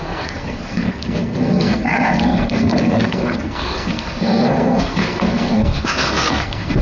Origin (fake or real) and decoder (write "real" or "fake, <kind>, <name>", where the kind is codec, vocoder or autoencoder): fake, codec, SNAC